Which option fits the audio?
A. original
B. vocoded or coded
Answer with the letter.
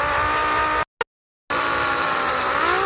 A